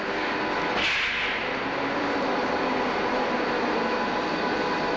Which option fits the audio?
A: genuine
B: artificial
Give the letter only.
A